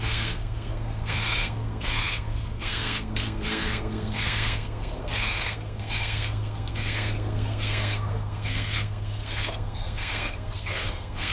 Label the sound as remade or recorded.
remade